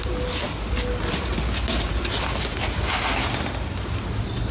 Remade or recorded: recorded